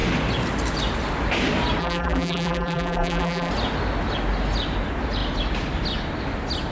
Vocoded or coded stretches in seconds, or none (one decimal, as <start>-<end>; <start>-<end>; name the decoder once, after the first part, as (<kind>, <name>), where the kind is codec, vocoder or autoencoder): 1.8-3.5 (vocoder, BigVGAN v2)